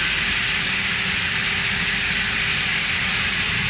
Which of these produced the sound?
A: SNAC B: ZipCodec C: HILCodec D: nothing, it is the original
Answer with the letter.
D